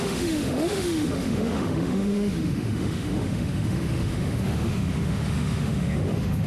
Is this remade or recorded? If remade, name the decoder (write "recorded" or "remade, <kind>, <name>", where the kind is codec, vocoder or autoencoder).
remade, autoencoder, DAC-VAE